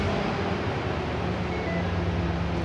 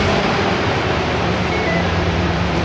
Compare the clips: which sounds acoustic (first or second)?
first